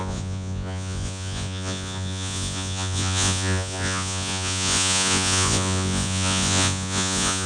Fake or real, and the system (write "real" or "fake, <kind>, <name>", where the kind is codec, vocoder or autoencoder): fake, vocoder, Vocos